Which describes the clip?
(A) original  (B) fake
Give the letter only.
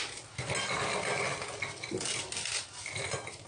A